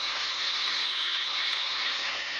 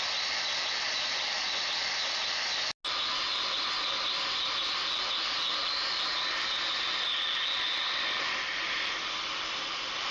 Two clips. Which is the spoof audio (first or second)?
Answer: first